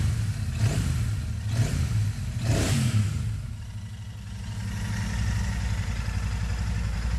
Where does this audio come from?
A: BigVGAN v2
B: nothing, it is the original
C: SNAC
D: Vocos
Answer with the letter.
B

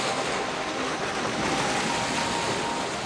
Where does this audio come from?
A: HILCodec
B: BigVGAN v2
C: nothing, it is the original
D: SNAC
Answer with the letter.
C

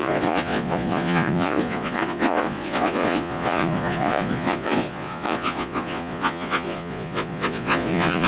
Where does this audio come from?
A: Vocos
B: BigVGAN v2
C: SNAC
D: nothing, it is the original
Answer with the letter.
A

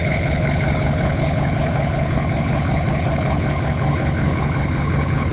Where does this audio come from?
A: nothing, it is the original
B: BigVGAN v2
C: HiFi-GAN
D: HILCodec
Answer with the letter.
D